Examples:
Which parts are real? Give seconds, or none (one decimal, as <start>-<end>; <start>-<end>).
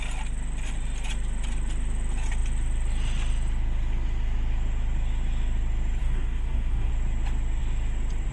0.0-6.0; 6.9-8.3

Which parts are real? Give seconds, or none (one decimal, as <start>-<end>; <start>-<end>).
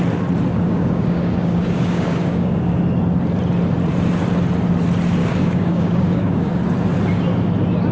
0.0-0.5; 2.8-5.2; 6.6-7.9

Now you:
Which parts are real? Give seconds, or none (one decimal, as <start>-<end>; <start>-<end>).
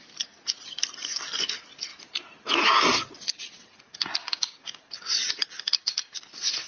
0.0-4.2; 4.8-6.7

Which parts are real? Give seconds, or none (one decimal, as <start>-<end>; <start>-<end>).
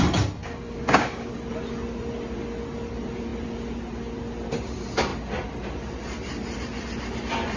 0.0-0.4; 1.3-7.6